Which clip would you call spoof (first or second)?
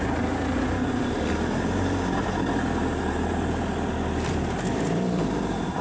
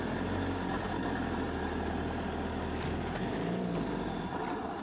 first